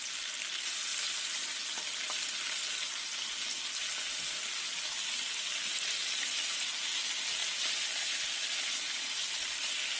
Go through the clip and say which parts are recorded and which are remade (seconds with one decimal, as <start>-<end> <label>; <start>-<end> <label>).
0.0-10.0 recorded